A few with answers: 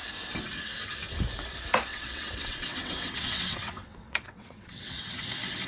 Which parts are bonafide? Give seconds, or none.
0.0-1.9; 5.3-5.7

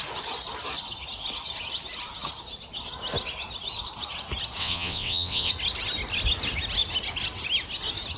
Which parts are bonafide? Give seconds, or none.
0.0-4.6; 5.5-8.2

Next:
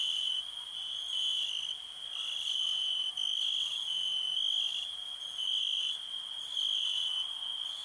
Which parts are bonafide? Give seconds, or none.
0.0-7.8

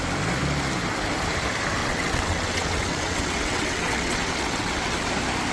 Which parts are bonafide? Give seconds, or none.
0.0-1.8; 5.1-5.5